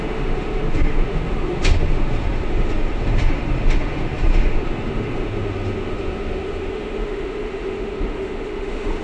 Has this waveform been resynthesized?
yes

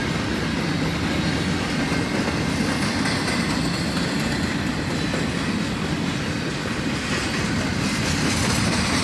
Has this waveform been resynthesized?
no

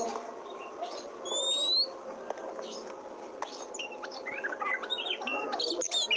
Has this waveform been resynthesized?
no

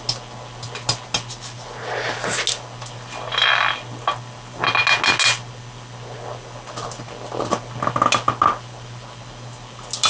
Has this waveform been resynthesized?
no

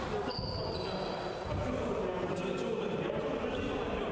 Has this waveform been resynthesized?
no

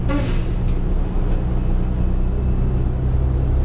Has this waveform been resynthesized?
no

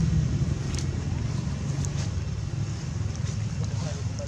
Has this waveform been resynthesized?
no